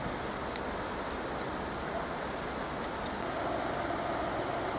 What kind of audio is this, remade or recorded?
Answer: recorded